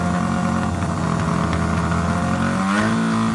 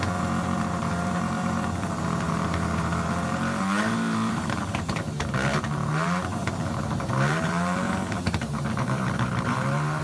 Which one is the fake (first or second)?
second